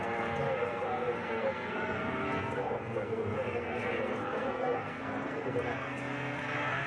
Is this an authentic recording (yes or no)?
no